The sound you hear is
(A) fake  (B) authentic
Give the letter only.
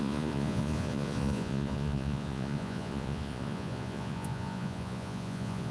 A